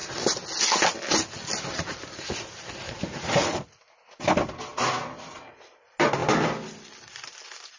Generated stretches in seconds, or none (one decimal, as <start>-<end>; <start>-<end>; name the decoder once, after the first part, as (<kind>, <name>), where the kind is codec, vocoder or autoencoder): none